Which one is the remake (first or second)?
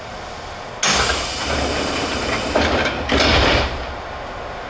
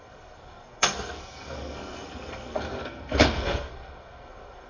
second